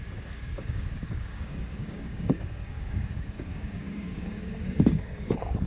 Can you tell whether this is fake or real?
fake